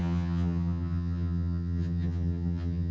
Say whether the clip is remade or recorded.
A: remade